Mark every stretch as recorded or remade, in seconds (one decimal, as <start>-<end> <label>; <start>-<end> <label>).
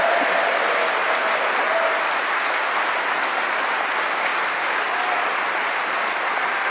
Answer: 0.0-1.2 recorded; 1.2-3.7 remade; 3.7-4.3 recorded; 4.3-6.3 remade; 6.3-6.7 recorded